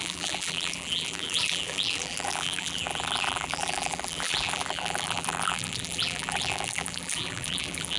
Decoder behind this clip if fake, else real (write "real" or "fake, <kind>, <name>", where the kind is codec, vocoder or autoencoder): fake, vocoder, BigVGAN v2